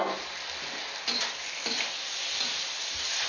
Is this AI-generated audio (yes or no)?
no